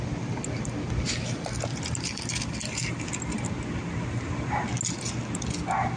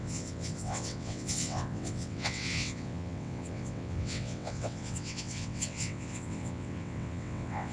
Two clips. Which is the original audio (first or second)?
first